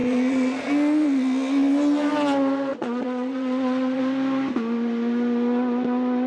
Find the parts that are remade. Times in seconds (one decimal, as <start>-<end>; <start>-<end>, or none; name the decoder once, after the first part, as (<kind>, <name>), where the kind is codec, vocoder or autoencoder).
0.0-0.7 (vocoder, Vocos); 2.7-4.0